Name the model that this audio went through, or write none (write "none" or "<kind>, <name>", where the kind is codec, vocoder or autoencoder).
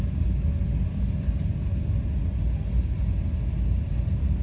none